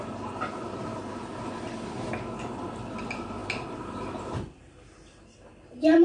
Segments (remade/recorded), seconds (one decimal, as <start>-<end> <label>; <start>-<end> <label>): 0.0-6.0 recorded